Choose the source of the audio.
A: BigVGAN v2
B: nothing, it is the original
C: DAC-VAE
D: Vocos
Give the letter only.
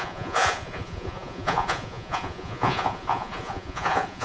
D